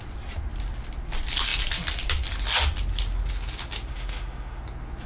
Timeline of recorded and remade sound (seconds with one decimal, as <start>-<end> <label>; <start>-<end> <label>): 0.0-3.9 recorded; 3.9-4.6 remade; 4.6-5.1 recorded